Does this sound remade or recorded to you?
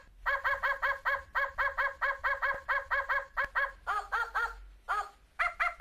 recorded